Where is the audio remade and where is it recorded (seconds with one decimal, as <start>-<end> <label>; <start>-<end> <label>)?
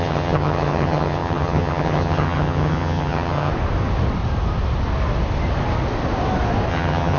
0.0-3.5 remade; 3.5-6.7 recorded; 6.7-7.2 remade